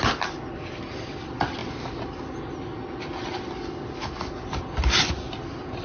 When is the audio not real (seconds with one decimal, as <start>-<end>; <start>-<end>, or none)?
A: none